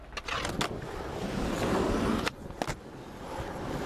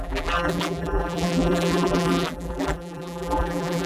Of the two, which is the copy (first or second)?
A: second